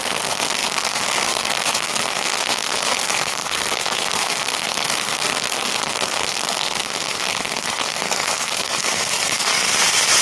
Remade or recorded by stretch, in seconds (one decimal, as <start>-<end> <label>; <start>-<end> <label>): 0.0-9.5 remade; 9.5-10.2 recorded